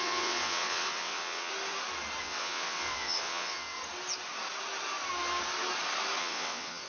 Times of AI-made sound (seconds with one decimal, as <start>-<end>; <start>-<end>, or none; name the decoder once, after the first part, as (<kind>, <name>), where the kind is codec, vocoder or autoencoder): 0.0-1.5 (vocoder, WaveNeXt); 2.2-3.8; 6.2-6.9